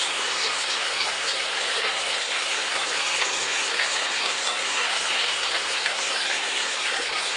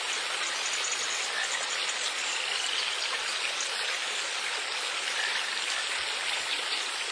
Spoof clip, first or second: first